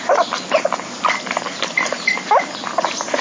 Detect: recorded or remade recorded